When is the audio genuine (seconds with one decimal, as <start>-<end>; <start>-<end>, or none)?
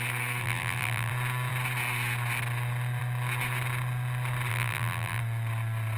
0.0-0.4; 1.1-4.5; 5.2-6.0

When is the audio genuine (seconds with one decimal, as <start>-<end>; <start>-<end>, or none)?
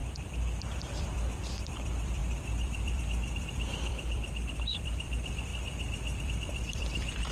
5.5-6.2